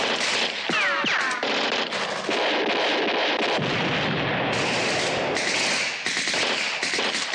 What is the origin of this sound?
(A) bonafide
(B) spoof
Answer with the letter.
A